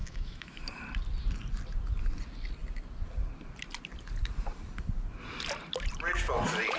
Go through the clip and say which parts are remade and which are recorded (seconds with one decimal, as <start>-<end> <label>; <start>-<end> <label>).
0.0-0.6 remade; 0.6-6.8 recorded